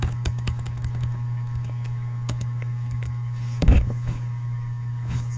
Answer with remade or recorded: remade